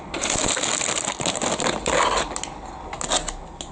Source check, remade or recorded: recorded